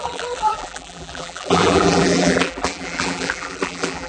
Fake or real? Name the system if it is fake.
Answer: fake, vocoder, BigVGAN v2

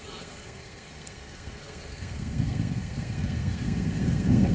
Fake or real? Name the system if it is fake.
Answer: fake, codec, SNAC